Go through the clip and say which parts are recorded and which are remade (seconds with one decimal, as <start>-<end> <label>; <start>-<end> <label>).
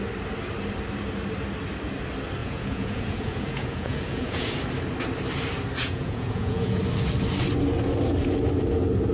0.0-2.4 recorded; 2.4-4.5 remade; 4.5-5.8 recorded; 5.8-6.8 remade; 6.8-9.1 recorded